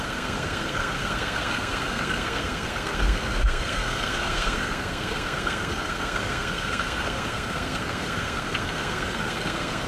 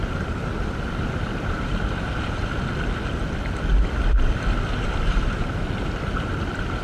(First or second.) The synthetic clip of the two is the first